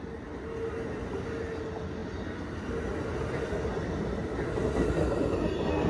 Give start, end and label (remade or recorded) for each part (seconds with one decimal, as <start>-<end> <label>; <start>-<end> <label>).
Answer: 0.0-5.9 recorded